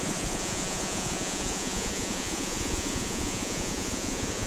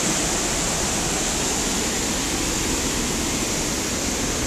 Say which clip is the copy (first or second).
first